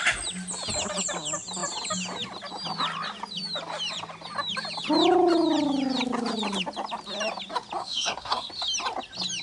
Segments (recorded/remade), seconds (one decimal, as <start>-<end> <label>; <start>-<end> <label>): 0.0-7.8 recorded; 7.8-8.5 remade; 8.5-9.4 recorded